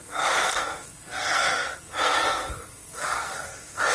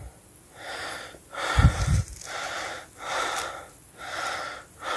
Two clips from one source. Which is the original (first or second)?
second